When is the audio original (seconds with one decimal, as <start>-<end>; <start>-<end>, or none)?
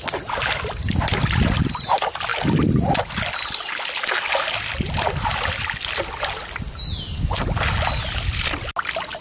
0.0-9.2